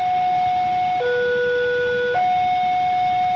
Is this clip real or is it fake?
real